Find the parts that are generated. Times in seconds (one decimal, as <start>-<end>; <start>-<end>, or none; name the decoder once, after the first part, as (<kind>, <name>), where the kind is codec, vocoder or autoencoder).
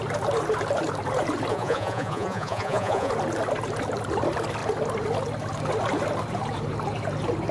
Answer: 1.5-3.1 (vocoder, Vocos)